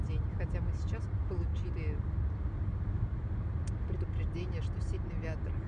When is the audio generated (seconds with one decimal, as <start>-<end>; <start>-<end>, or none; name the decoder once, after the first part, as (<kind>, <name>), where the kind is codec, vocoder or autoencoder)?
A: none